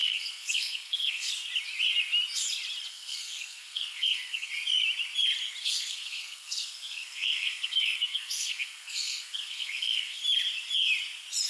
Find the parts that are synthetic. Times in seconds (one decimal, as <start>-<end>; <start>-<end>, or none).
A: 0.0-1.3; 2.9-4.5; 5.6-10.2